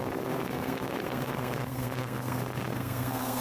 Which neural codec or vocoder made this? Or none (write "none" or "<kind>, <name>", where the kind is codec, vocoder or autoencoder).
codec, SNAC